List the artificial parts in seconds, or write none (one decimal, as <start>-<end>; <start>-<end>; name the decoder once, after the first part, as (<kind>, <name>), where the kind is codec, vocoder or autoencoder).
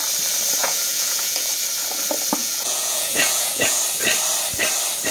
0.6-1.5 (vocoder, Vocos); 2.4-3.8